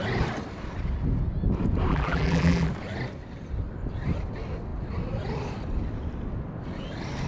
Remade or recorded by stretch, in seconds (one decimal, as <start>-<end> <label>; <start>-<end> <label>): 0.0-1.9 recorded; 1.9-2.7 remade; 2.7-7.3 recorded